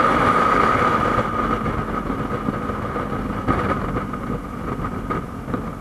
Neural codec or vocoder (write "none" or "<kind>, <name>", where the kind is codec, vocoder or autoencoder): none